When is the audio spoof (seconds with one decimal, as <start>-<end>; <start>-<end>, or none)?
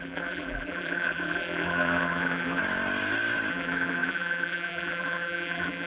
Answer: 0.0-2.6; 3.5-5.9